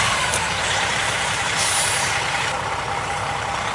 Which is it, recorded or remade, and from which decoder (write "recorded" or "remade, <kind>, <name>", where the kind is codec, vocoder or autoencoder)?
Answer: remade, vocoder, BigVGAN v2